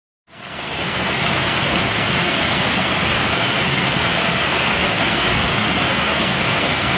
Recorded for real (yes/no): no